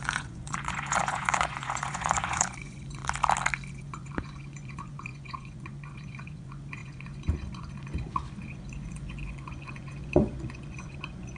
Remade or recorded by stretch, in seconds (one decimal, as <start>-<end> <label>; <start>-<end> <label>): 0.0-3.0 remade; 3.0-3.7 recorded; 3.7-11.4 remade